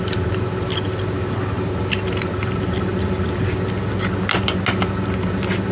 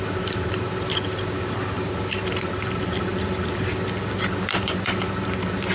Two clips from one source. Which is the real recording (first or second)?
first